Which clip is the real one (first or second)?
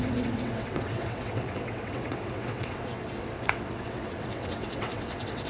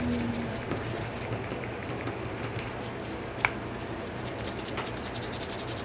second